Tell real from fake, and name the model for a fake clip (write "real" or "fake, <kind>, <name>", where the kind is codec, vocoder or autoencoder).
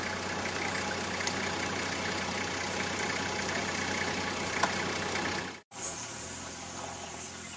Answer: real